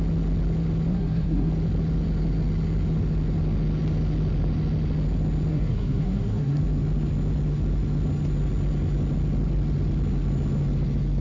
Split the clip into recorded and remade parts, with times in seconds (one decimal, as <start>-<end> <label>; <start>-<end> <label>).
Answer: 0.0-0.9 recorded; 0.9-1.5 remade; 1.5-5.5 recorded; 5.5-6.6 remade; 6.6-11.2 recorded